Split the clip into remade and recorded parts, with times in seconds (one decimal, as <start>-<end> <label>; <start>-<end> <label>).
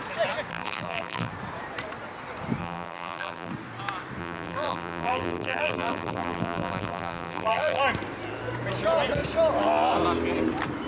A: 0.0-0.5 recorded; 0.5-1.3 remade; 1.3-2.6 recorded; 2.6-3.5 remade; 3.5-4.2 recorded; 4.2-7.8 remade; 7.8-10.9 recorded